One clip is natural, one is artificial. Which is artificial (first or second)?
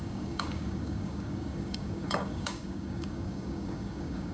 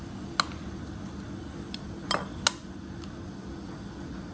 first